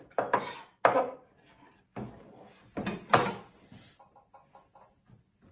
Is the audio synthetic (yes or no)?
no